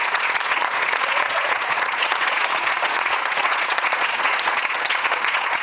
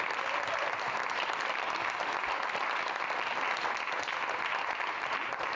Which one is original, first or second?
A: second